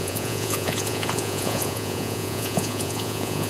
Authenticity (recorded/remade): remade